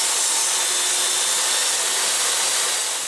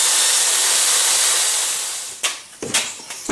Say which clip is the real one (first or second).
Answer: first